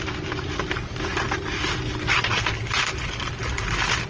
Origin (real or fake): real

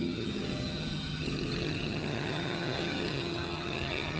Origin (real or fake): fake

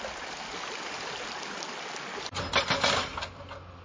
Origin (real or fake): real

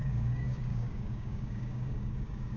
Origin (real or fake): fake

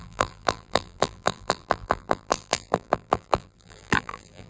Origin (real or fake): fake